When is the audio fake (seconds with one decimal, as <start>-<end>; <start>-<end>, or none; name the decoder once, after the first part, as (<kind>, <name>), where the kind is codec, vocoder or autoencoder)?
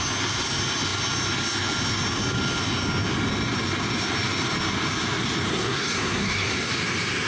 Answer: 5.5-6.7 (codec, SNAC)